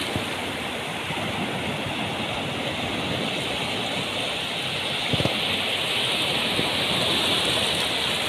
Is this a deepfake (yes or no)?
no